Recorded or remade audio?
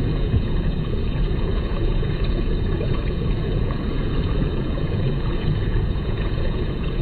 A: remade